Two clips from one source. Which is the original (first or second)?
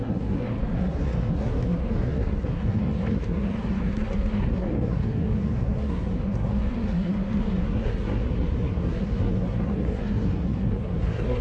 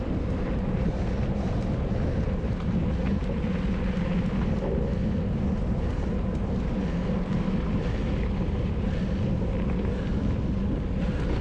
second